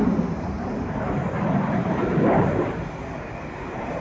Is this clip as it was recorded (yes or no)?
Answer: no